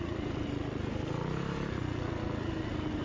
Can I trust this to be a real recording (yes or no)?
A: yes